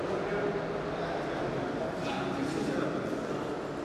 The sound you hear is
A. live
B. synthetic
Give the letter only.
A